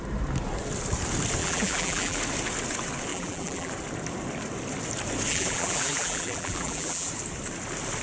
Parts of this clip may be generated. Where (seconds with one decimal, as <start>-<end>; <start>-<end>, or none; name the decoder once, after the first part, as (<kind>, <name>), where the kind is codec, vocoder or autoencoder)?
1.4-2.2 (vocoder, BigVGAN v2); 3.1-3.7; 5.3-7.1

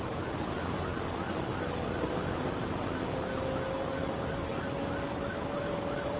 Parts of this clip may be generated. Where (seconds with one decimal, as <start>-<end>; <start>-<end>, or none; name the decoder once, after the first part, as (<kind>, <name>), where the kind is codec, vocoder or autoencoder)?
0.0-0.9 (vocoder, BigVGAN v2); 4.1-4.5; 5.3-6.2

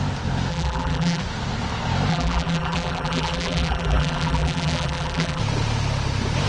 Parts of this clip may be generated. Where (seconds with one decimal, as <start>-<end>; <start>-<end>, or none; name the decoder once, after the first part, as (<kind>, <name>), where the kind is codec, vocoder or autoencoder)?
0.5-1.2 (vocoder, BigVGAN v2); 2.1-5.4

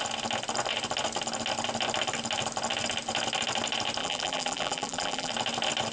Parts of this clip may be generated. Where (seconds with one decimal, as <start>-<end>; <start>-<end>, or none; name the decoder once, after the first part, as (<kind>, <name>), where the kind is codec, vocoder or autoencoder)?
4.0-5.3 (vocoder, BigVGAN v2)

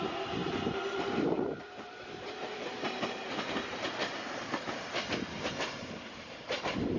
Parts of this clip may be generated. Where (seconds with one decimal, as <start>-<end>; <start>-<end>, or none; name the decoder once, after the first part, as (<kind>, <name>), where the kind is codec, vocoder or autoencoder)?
0.0-7.0 (vocoder, BigVGAN v2)

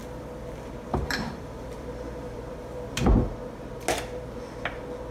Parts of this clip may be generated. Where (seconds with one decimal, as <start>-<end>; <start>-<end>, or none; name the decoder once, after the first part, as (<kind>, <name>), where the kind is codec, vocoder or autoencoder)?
0.0-3.1 (vocoder, BigVGAN v2)